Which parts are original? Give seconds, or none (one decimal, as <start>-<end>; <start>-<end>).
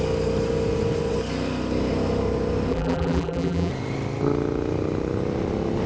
0.0-2.7; 3.7-5.9